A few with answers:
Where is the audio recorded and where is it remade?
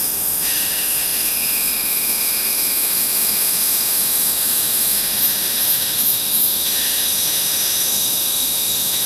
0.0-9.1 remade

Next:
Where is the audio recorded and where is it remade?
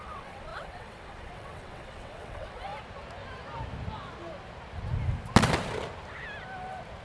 0.0-2.7 remade; 2.7-7.0 recorded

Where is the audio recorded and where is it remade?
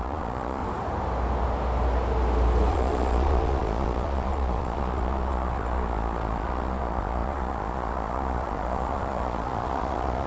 0.0-0.6 remade; 0.6-2.7 recorded; 2.7-10.3 remade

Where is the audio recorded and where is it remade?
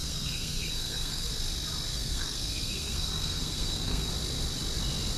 0.0-1.3 remade; 1.3-1.9 recorded; 1.9-4.1 remade; 4.1-5.2 recorded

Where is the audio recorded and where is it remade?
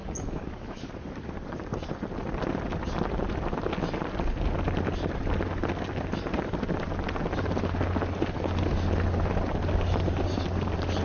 0.0-0.9 remade; 0.9-11.0 recorded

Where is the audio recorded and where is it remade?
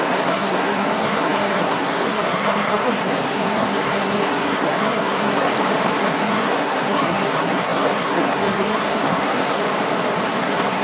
0.0-5.5 remade; 5.5-6.0 recorded; 6.0-9.6 remade; 9.6-10.4 recorded; 10.4-10.8 remade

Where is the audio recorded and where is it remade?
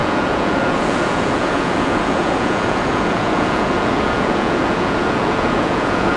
0.0-6.2 remade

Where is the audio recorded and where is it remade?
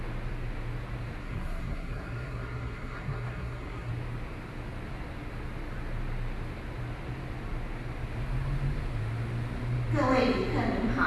0.0-1.2 recorded; 1.2-3.9 remade; 3.9-11.1 recorded